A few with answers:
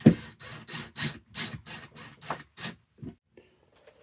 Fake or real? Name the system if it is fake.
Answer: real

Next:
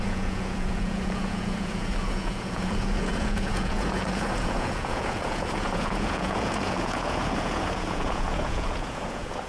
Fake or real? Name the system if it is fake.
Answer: fake, vocoder, Vocos